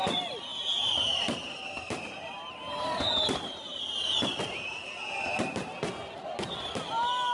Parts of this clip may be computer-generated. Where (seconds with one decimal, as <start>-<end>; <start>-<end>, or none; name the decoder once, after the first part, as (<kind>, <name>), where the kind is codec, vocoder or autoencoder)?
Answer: 0.5-4.4 (vocoder, BigVGAN v2)